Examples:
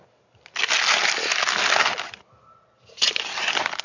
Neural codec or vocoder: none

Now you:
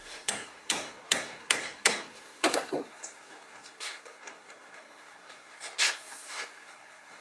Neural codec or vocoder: codec, SNAC